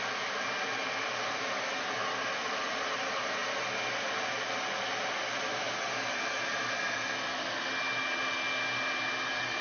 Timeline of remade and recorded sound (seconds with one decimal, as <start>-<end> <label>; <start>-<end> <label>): 0.0-9.6 recorded